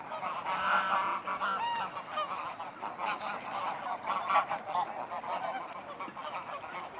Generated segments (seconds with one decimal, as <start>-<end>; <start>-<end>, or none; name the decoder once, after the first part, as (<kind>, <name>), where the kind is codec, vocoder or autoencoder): none

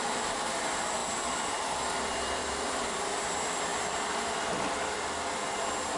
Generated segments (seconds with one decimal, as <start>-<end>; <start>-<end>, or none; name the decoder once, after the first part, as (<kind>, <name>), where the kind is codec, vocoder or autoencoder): 0.0-3.7 (vocoder, BigVGAN v2); 4.5-6.0

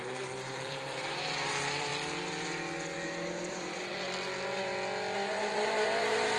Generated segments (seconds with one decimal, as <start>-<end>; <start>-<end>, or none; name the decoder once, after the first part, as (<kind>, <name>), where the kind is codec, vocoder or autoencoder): 0.0-1.9 (vocoder, BigVGAN v2); 3.5-3.9; 5.3-6.4

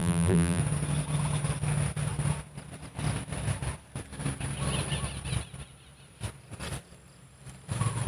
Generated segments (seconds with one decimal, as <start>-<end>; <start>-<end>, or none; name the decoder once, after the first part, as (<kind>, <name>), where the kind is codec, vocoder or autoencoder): 0.0-0.6 (vocoder, BigVGAN v2)

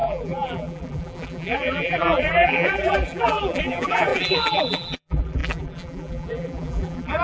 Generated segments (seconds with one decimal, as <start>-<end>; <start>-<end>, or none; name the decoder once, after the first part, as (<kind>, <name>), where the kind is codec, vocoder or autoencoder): 0.0-7.2 (vocoder, BigVGAN v2)